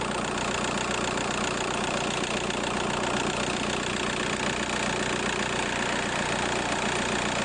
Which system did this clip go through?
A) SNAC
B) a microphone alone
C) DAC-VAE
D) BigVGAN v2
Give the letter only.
B